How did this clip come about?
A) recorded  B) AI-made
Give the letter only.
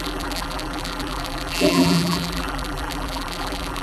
B